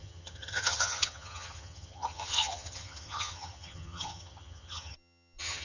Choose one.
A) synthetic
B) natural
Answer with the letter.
A